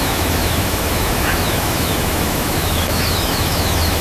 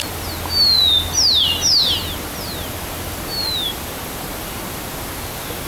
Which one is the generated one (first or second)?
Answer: first